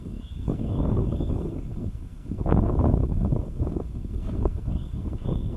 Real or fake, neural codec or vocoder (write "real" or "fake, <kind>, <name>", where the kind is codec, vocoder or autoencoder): fake, codec, SNAC